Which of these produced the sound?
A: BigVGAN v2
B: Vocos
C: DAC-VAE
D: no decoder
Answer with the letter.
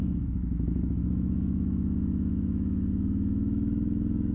C